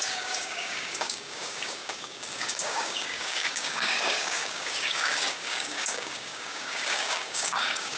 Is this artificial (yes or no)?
yes